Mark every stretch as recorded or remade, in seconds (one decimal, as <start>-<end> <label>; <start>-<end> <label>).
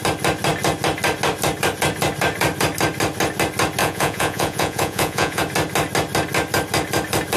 0.0-3.8 recorded; 3.8-5.4 remade; 5.4-7.4 recorded